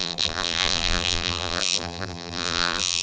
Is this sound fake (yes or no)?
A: yes